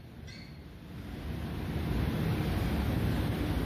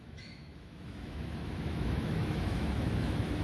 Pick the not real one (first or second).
second